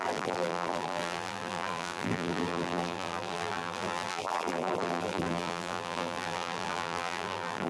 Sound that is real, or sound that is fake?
fake